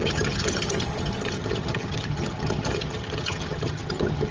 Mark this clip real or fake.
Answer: fake